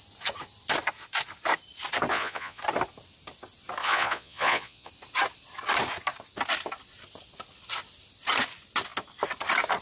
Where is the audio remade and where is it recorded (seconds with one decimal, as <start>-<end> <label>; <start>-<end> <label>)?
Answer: 0.0-2.1 recorded; 2.1-2.6 remade; 2.6-3.8 recorded; 3.8-4.9 remade; 4.9-9.8 recorded